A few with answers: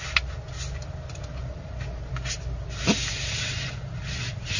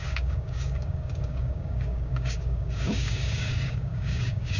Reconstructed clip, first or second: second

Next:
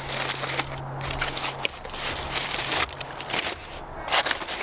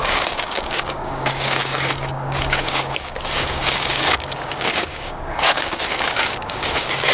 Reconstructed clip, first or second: second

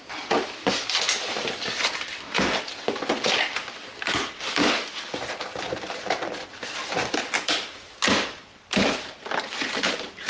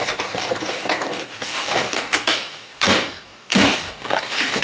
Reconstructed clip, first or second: second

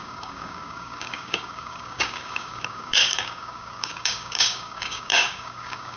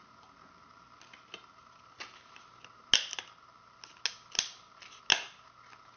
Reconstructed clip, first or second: first